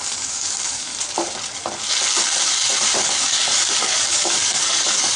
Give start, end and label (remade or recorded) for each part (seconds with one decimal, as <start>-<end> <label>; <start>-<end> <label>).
0.0-0.9 remade; 0.9-3.0 recorded; 3.0-5.2 remade